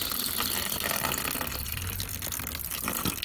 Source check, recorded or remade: recorded